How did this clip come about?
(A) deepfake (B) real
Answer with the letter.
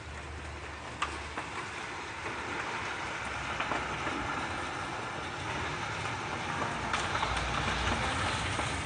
B